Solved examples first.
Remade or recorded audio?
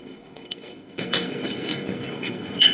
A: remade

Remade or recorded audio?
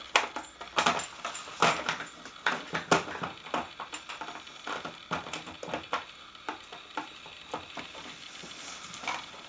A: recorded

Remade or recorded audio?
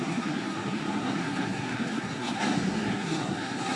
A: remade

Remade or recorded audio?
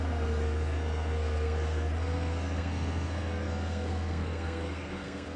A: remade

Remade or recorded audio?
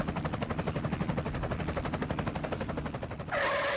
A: recorded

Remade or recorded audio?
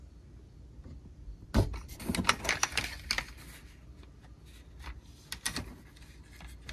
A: recorded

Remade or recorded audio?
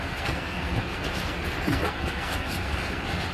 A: remade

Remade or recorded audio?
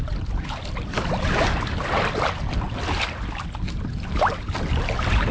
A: recorded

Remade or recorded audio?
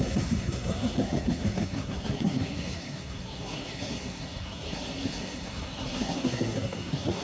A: remade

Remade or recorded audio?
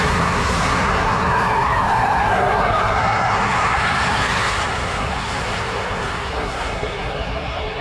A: remade